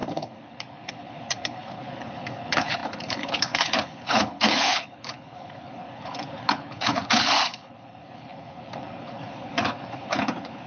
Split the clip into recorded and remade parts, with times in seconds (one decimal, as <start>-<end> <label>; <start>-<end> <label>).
0.0-10.7 remade